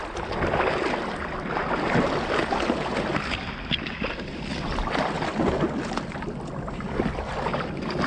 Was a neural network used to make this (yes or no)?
no